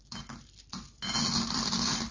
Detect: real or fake real